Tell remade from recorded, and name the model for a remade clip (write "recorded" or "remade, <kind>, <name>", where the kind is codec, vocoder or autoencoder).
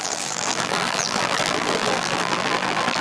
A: remade, vocoder, BigVGAN v2